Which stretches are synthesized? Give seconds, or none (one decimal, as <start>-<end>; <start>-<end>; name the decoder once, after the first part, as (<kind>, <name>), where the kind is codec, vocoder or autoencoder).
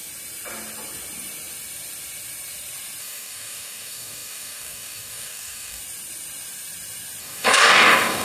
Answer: 3.0-5.8 (codec, DAC); 7.2-8.2